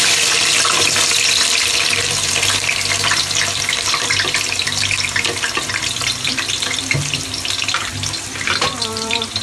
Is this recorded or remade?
remade